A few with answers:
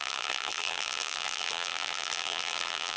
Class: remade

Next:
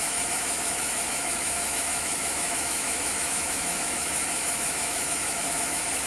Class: remade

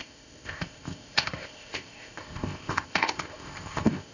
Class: remade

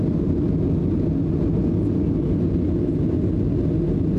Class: recorded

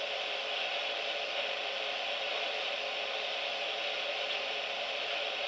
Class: recorded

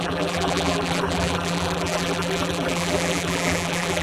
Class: remade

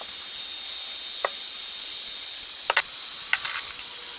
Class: recorded